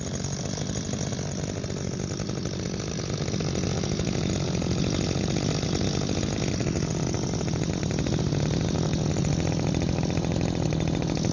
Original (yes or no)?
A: yes